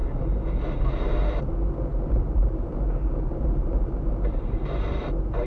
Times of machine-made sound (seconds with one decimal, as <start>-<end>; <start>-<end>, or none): 1.9-5.5